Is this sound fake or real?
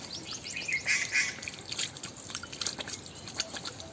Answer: fake